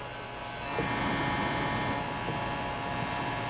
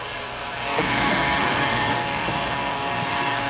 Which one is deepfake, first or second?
second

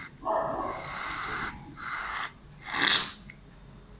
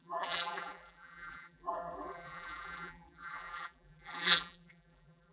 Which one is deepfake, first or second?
second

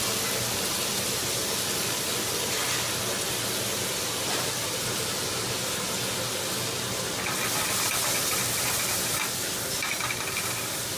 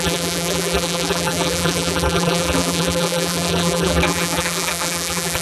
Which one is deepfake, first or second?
second